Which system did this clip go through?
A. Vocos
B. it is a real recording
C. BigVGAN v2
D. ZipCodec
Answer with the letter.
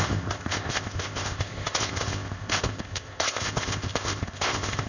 D